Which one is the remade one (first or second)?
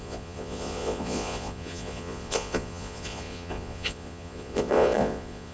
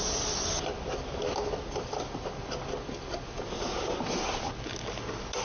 first